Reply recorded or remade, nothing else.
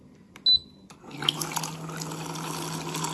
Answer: recorded